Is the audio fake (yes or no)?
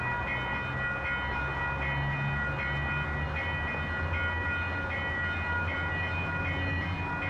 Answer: no